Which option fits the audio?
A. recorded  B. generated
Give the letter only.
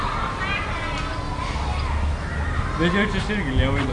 A